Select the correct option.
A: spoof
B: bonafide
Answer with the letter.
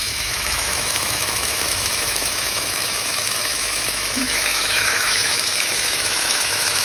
A